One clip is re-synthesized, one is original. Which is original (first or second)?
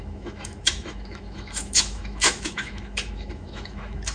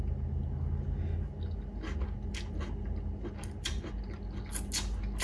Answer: second